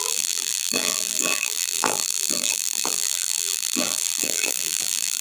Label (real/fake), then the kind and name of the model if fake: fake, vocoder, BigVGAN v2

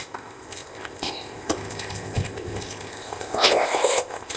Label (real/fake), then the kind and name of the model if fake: fake, codec, ZipCodec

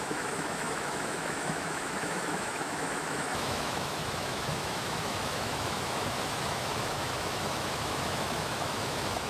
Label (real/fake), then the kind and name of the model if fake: fake, autoencoder, DAC-VAE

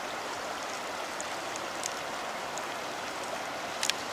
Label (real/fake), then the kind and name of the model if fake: real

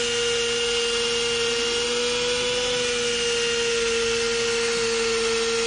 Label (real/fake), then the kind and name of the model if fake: real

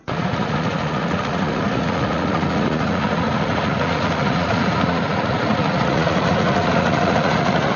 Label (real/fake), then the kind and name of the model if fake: fake, vocoder, Vocos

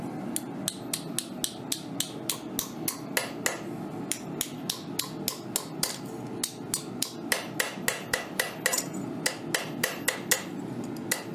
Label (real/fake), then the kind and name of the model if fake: real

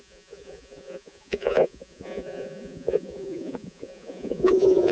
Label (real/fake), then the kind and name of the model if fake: fake, vocoder, Vocos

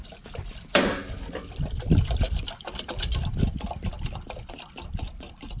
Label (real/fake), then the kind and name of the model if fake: real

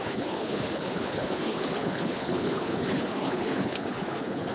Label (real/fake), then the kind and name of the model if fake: fake, codec, HILCodec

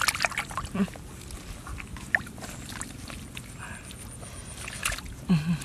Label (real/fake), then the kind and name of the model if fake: real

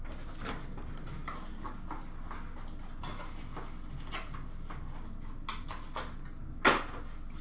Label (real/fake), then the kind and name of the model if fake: real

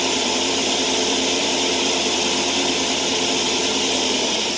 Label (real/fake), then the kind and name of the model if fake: fake, vocoder, BigVGAN v2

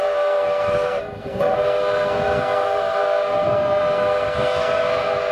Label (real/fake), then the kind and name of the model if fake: fake, codec, SNAC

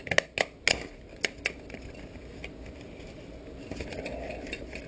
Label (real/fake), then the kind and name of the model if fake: real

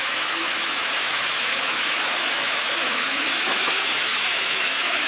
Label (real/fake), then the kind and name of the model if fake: fake, autoencoder, DAC-VAE